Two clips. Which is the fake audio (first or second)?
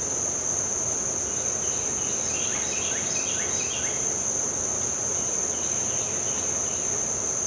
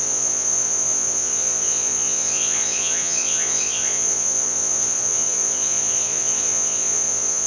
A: second